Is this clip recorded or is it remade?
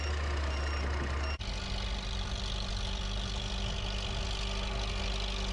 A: recorded